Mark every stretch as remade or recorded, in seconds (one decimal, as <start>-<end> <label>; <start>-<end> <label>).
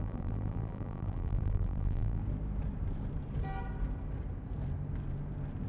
0.0-2.2 remade; 2.2-5.7 recorded